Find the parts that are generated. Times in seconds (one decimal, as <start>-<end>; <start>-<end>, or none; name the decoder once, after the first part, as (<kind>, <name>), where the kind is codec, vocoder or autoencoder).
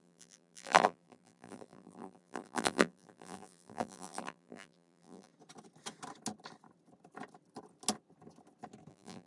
0.0-5.3 (vocoder, BigVGAN v2); 8.9-9.3